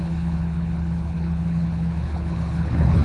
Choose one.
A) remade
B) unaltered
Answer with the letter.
A